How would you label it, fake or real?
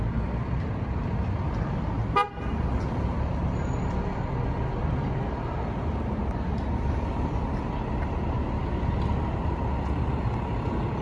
real